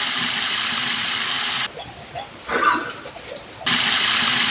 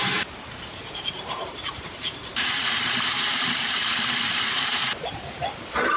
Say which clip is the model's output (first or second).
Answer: second